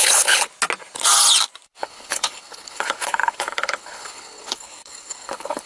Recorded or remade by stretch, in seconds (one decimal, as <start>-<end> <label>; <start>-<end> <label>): 0.0-0.5 remade; 0.5-1.8 recorded; 1.8-5.7 remade